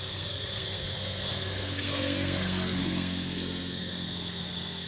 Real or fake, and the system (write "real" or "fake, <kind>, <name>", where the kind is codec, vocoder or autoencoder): fake, codec, SNAC